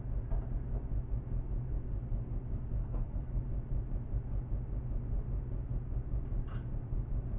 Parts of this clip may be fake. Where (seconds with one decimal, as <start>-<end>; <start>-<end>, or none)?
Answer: 2.8-3.4